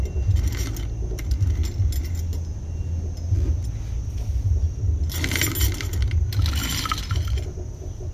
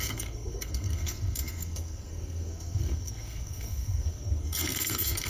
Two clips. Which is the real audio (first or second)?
first